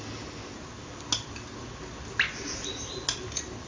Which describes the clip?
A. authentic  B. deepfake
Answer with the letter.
A